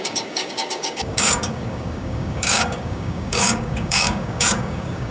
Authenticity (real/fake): fake